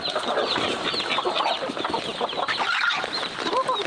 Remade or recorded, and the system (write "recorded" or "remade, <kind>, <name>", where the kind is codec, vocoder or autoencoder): recorded